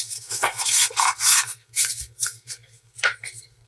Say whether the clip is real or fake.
fake